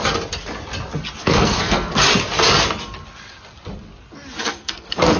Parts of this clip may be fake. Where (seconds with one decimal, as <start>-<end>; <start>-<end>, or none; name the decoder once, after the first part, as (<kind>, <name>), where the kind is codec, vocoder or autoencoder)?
1.2-1.9 (codec, SNAC); 4.4-5.2